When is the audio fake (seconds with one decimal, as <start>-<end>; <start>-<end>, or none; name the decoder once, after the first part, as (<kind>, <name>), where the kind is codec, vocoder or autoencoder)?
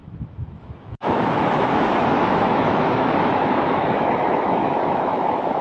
0.0-5.6 (autoencoder, DAC-VAE)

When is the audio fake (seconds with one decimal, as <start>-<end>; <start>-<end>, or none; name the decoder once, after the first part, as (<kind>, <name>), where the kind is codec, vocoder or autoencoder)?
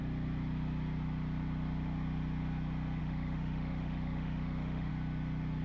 3.0-4.9 (autoencoder, DAC-VAE)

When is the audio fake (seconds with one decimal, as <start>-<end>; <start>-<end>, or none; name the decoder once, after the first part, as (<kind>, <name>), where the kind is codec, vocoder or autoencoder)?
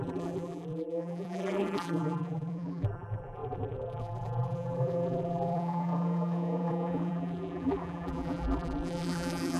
0.0-9.6 (vocoder, BigVGAN v2)